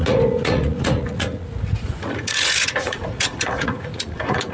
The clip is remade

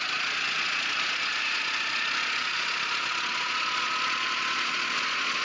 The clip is remade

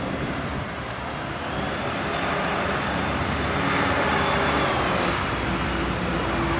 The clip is recorded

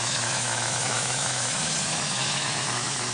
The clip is remade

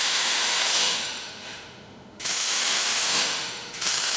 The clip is remade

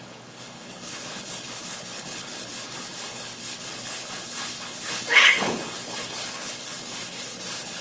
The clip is remade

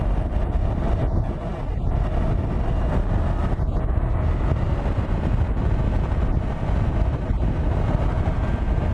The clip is recorded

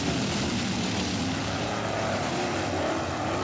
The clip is recorded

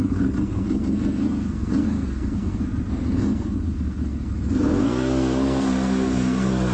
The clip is remade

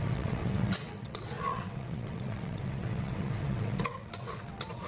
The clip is remade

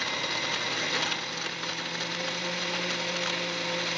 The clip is recorded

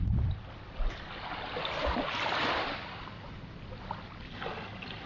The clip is recorded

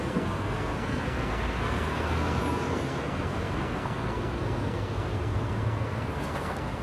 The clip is remade